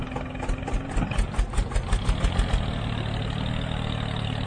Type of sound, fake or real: real